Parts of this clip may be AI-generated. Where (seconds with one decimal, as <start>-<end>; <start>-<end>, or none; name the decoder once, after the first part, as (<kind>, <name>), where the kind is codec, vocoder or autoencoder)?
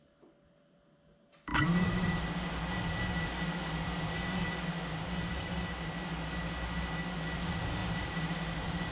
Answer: 1.5-2.2 (vocoder, BigVGAN v2); 7.8-8.9